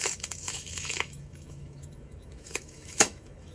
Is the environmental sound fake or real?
fake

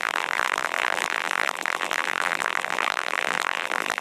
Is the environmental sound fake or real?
fake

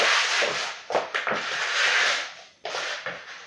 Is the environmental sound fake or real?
real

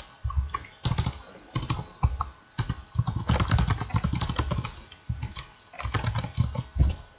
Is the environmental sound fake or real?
real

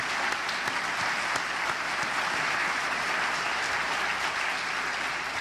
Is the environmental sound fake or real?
real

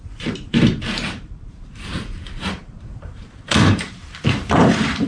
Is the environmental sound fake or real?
fake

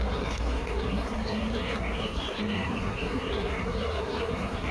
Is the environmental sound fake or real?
fake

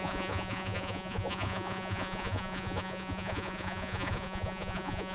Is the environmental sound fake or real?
fake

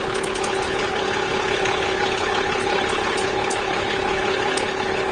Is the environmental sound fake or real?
fake